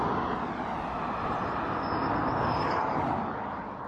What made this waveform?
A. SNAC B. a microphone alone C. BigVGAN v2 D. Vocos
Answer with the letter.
B